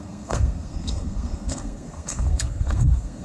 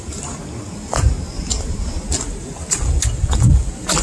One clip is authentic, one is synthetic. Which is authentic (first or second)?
second